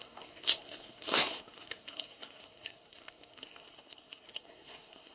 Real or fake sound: fake